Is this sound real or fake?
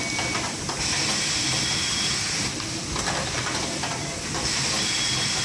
real